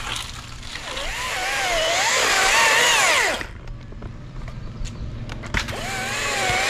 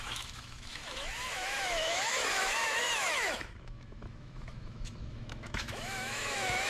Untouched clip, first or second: first